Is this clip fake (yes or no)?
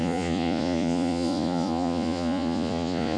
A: yes